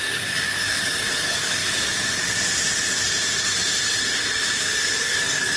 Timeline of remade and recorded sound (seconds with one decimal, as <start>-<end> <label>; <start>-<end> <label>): 0.0-1.6 remade; 1.6-5.0 recorded; 5.0-5.6 remade